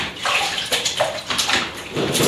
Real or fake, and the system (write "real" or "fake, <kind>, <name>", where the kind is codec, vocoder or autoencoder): fake, vocoder, BigVGAN v2